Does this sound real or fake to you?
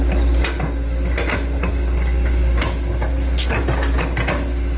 real